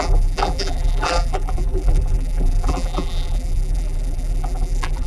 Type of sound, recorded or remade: remade